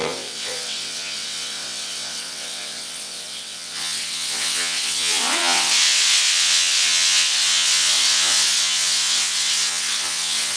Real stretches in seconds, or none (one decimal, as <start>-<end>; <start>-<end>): none